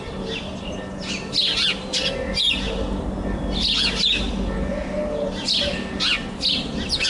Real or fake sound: real